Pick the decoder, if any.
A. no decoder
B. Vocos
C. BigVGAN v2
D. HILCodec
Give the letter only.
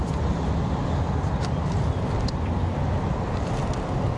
A